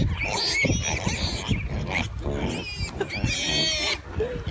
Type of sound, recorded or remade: recorded